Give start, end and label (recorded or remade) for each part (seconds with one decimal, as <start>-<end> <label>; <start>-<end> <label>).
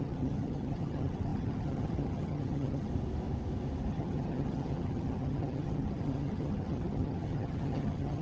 0.0-2.9 remade; 2.9-3.9 recorded; 3.9-8.2 remade